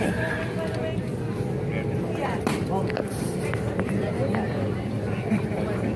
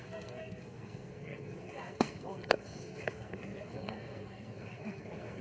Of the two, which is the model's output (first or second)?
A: second